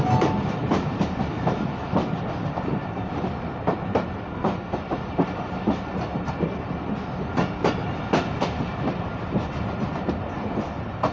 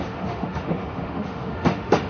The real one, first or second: first